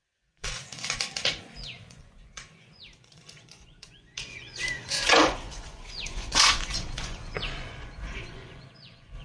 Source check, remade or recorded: remade